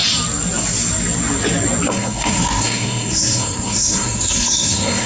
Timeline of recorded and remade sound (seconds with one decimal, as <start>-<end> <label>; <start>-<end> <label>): 0.0-1.9 recorded; 1.9-5.1 remade